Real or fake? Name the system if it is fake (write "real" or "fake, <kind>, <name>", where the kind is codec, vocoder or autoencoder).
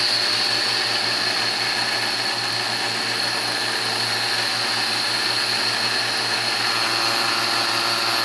real